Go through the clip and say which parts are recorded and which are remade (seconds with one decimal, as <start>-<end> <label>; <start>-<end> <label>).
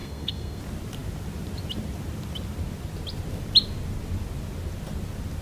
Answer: 0.0-0.6 remade; 0.6-5.4 recorded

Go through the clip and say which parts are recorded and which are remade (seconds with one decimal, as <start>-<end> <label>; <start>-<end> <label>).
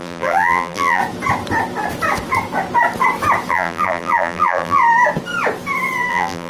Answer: 0.0-1.0 remade; 1.0-3.5 recorded; 3.5-4.8 remade; 4.8-6.1 recorded; 6.1-6.5 remade